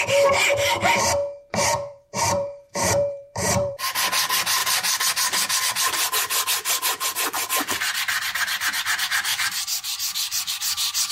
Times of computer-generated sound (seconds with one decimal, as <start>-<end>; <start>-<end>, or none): 1.7-3.8; 9.3-10.5